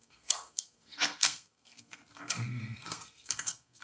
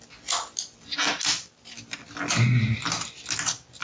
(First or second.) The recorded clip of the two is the second